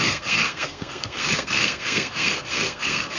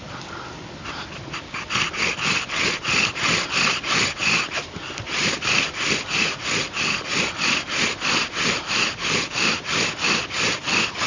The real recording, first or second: second